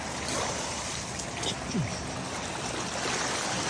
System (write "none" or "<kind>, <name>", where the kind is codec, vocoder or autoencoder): none